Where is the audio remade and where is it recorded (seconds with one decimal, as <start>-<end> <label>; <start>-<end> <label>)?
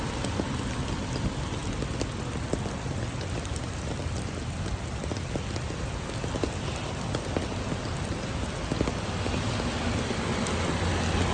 0.0-11.3 recorded